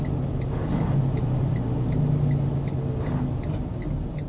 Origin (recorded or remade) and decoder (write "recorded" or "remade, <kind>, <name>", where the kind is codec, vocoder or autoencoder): recorded